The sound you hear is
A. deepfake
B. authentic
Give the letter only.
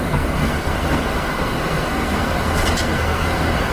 A